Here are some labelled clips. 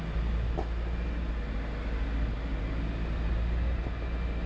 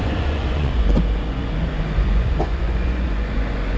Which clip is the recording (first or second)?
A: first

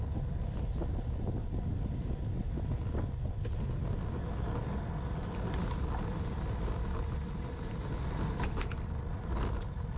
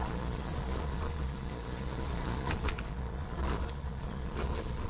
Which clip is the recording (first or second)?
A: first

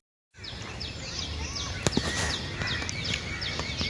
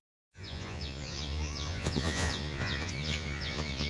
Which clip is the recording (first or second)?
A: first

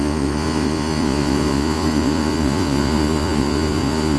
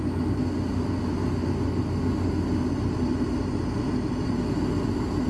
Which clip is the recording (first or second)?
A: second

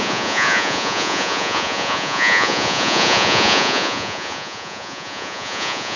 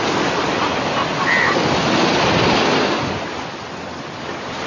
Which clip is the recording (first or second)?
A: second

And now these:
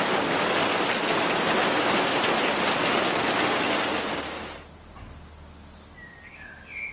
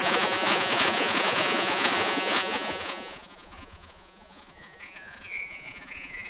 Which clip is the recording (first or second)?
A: first